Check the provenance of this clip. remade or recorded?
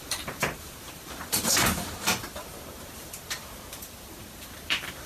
remade